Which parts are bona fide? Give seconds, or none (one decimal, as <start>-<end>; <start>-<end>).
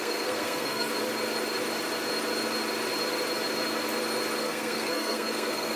0.9-4.4